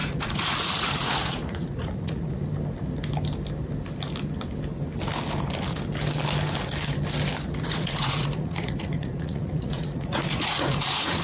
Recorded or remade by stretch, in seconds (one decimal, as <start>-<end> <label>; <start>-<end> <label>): 0.0-2.4 remade; 2.4-7.6 recorded; 7.6-11.2 remade